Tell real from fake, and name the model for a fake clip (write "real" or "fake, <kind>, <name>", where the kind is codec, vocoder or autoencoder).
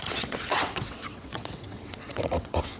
fake, vocoder, WaveNeXt